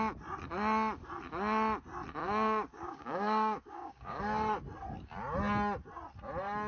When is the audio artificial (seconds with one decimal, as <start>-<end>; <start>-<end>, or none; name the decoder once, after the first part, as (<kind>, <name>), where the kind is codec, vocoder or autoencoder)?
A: 2.2-4.2 (codec, DAC)